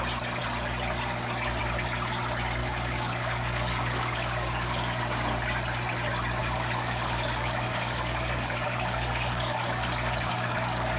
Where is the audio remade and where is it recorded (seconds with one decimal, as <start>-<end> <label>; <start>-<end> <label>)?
0.0-2.6 recorded; 2.6-5.0 remade; 5.0-6.4 recorded; 6.4-11.0 remade